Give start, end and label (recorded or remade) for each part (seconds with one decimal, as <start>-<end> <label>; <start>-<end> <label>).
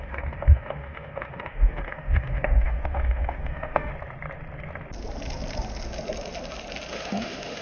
0.0-3.9 remade; 3.9-6.9 recorded; 6.9-7.6 remade